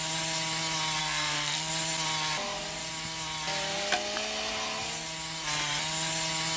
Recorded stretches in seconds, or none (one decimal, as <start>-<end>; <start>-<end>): 0.0-1.0; 1.7-6.6